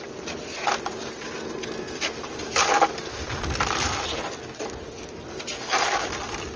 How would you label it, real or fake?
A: real